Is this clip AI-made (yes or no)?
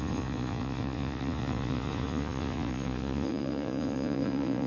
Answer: yes